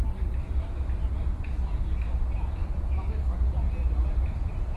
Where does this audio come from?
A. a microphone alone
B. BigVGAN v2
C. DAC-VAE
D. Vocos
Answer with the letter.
A